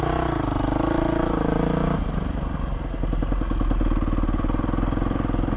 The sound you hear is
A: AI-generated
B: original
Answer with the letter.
B